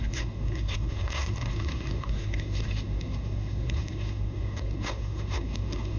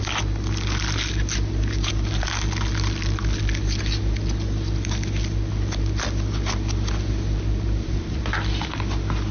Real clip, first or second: second